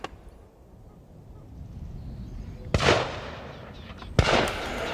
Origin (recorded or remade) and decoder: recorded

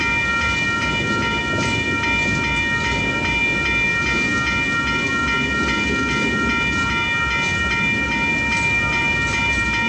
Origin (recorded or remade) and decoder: recorded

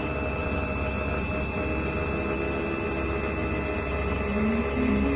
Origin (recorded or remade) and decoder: recorded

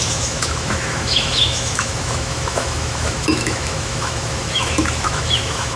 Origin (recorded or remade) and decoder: remade, autoencoder, DAC-VAE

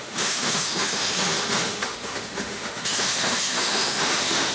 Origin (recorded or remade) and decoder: remade, autoencoder, DAC-VAE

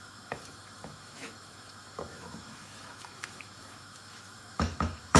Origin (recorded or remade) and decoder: remade, autoencoder, DAC-VAE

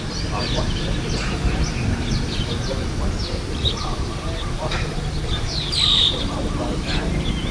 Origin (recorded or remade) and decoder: recorded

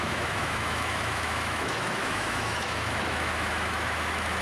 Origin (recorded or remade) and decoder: remade, autoencoder, DAC-VAE